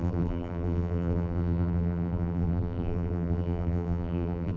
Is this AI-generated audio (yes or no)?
yes